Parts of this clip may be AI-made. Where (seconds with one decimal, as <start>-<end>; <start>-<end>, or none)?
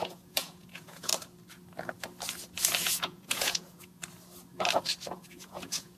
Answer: 0.0-1.1; 2.8-4.0; 5.1-6.0